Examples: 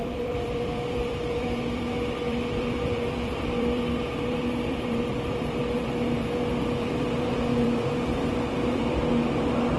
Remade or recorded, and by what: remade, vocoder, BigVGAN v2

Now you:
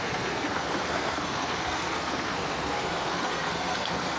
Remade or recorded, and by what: remade, codec, SNAC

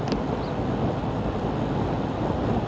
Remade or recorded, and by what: recorded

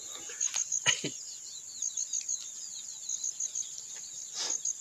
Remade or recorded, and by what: recorded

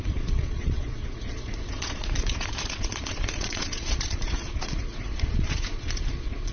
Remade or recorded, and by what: remade, vocoder, Vocos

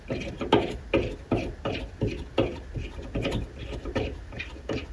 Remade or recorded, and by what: recorded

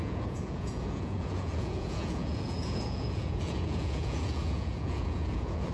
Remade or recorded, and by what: remade, vocoder, Vocos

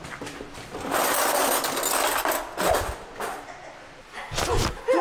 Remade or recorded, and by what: recorded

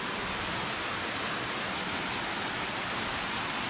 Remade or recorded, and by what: recorded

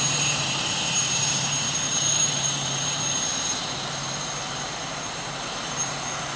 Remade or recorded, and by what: remade, vocoder, BigVGAN v2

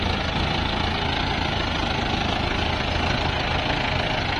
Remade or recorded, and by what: recorded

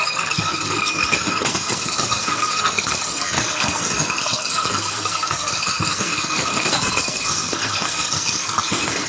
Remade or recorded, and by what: remade, codec, SNAC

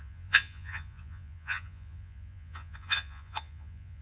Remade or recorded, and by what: remade, vocoder, Vocos